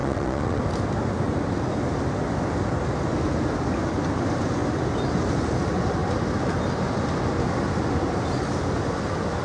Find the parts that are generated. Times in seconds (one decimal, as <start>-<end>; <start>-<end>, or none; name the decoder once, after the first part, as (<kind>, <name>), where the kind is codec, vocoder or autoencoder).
0.0-0.6 (vocoder, Vocos)